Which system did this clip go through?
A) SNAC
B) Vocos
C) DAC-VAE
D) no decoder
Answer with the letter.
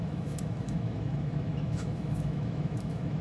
C